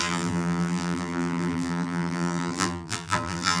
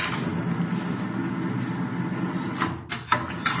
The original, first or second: second